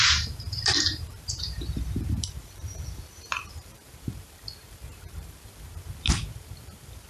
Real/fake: fake